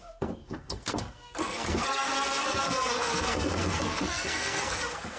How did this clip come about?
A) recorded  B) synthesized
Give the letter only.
B